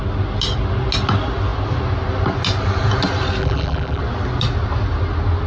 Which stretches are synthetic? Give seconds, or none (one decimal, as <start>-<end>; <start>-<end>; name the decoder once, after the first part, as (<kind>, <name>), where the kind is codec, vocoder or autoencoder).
3.4-4.0 (vocoder, BigVGAN v2)

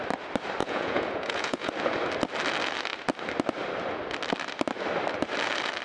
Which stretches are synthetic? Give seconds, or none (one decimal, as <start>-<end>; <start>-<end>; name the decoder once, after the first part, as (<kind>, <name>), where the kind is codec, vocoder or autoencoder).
0.6-1.7 (vocoder, Vocos)

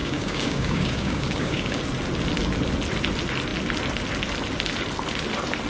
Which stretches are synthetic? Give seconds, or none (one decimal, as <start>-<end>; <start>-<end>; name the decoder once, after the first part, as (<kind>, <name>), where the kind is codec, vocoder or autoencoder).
0.0-1.8 (codec, DAC)